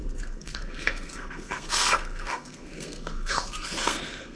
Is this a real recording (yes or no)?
no